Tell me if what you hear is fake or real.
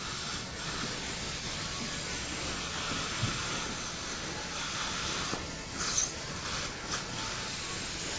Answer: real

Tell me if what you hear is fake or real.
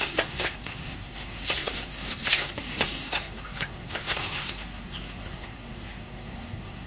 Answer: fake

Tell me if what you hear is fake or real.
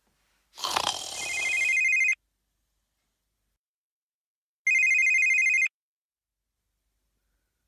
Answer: real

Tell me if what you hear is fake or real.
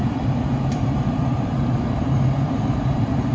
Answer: fake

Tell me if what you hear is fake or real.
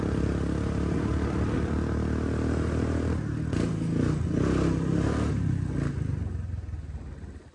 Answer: real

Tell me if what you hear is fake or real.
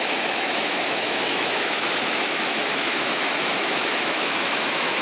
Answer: fake